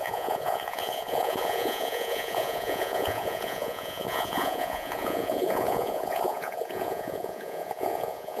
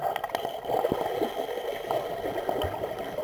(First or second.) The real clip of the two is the second